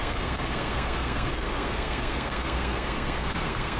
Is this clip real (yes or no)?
no